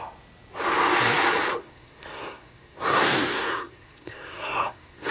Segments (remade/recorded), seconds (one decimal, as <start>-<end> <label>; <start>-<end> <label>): 0.0-1.6 recorded; 1.6-5.1 remade